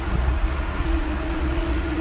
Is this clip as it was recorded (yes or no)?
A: no